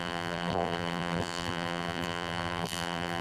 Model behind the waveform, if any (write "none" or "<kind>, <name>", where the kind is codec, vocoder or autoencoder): vocoder, BigVGAN v2